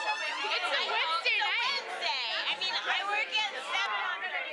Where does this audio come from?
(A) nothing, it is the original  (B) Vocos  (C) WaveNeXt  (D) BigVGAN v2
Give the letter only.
A